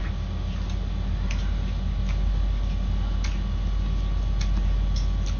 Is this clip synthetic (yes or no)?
no